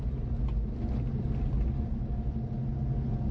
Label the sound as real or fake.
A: real